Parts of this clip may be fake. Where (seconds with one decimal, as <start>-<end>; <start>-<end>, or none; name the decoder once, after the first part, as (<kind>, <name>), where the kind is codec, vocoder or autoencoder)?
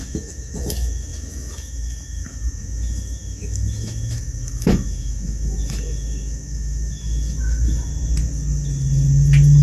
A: 0.0-7.9 (autoencoder, DAC-VAE)